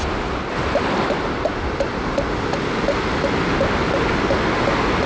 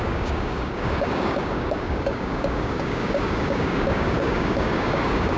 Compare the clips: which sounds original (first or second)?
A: first